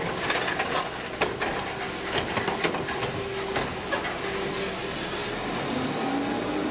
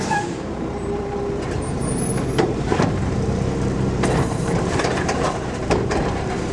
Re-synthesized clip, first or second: second